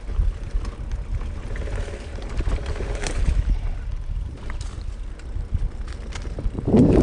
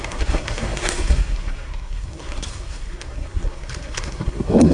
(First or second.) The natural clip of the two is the first